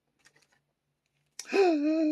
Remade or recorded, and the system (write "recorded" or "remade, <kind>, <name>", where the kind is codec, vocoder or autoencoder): recorded